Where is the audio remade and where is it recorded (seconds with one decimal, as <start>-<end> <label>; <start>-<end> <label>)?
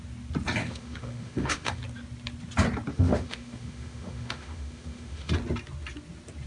0.0-0.6 recorded; 0.6-1.8 remade; 1.8-2.9 recorded; 2.9-5.3 remade; 5.3-6.5 recorded